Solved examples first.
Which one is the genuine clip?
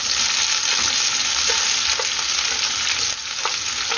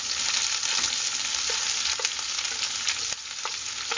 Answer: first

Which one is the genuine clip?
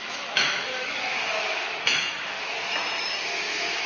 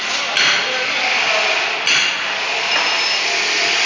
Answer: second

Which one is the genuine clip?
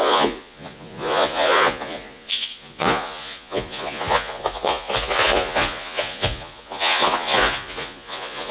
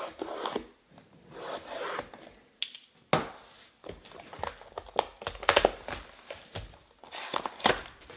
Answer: second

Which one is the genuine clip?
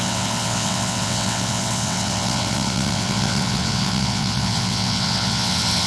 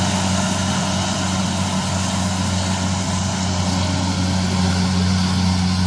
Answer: second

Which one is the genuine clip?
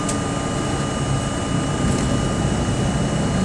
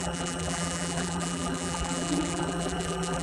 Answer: first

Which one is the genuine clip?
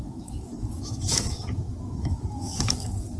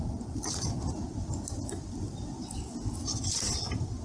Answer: second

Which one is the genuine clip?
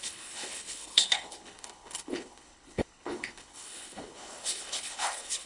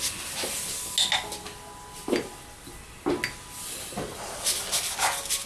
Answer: second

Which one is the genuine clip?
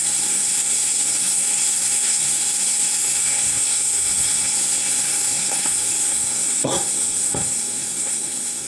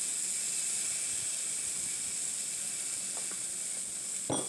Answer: second